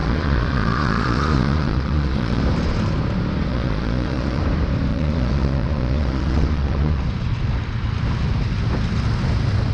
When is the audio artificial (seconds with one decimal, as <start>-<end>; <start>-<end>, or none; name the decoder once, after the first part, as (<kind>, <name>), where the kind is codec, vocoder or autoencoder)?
0.0-2.4 (vocoder, Vocos); 3.5-4.4; 4.9-7.0